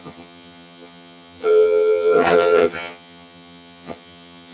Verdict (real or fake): fake